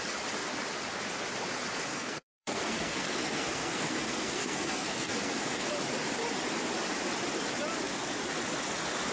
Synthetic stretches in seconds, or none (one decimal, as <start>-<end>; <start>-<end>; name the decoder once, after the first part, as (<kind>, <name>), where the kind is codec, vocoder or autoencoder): 1.9-5.7 (codec, SNAC)